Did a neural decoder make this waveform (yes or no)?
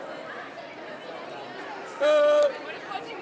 no